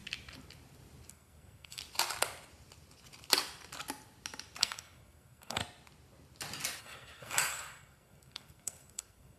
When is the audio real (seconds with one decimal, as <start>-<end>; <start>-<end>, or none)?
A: 0.0-1.1; 1.8-4.6; 5.6-6.8